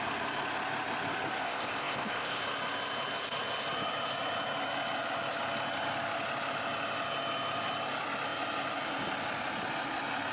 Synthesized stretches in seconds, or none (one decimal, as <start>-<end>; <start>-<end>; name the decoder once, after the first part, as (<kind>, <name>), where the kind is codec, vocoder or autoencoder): 1.4-2.4 (codec, ZipCodec)